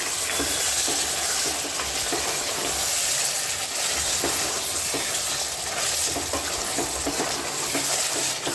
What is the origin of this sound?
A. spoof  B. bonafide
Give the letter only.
B